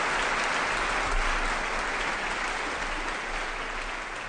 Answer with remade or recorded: recorded